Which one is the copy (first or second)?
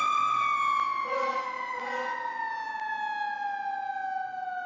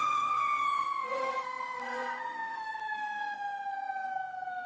second